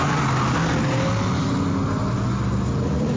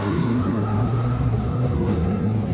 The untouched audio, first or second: first